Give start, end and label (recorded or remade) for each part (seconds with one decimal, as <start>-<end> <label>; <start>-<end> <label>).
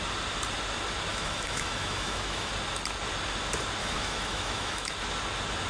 0.0-1.1 recorded; 1.1-2.5 remade; 2.5-3.8 recorded; 3.8-4.9 remade; 4.9-5.7 recorded